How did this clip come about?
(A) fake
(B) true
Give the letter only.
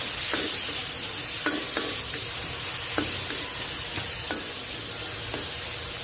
B